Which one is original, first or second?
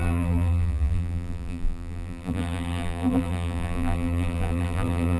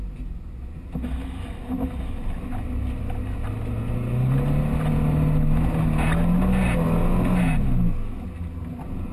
second